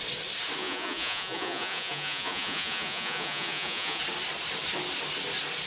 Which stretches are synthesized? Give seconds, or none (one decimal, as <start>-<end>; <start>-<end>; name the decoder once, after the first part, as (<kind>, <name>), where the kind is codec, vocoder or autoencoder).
0.6-4.0 (vocoder, Vocos)